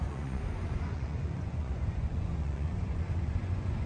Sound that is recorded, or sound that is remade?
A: remade